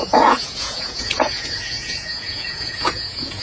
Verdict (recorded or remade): remade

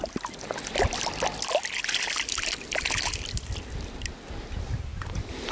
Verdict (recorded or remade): recorded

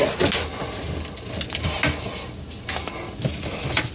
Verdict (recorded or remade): recorded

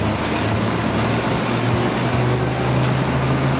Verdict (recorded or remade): recorded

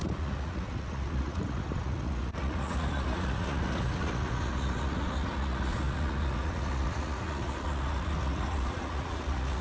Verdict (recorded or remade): remade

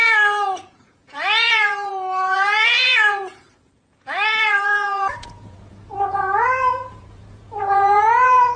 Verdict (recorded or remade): remade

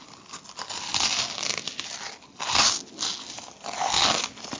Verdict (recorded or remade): recorded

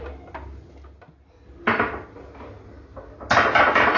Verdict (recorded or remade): recorded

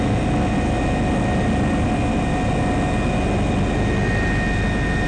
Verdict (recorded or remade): recorded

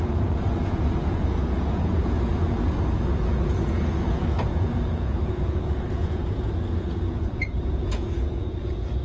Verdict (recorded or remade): remade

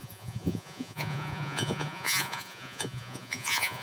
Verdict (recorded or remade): remade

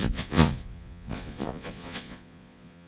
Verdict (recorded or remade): remade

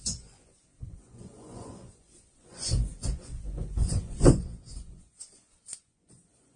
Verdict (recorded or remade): remade